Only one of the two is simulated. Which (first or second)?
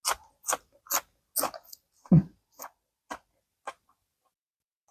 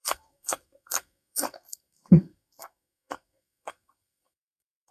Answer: second